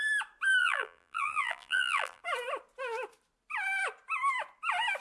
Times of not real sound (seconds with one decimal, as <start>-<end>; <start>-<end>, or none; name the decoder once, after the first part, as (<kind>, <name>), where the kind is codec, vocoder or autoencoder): 0.6-2.2 (vocoder, BigVGAN v2)